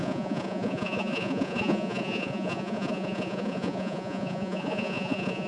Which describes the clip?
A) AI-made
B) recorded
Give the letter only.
A